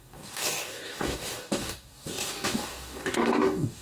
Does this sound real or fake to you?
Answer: fake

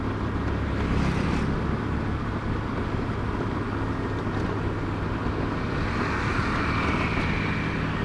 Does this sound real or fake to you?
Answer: real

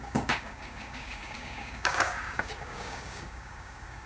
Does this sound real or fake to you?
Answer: fake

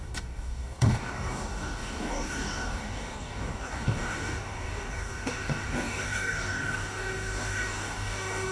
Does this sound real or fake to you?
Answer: fake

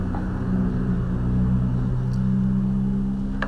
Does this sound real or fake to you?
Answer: real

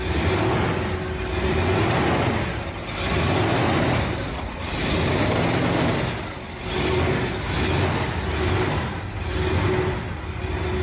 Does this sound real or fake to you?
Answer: real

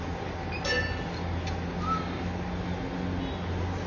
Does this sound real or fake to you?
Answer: real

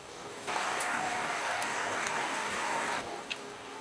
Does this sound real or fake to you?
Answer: fake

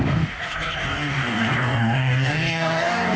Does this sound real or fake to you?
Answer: fake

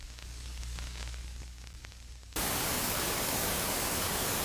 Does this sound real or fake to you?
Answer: fake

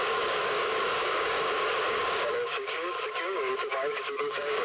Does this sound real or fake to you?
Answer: fake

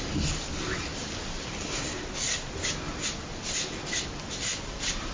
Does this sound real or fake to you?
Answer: real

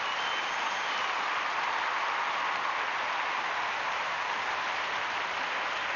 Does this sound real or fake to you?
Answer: real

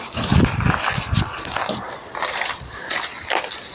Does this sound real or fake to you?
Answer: real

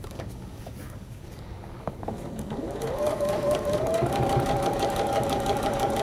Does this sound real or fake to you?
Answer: fake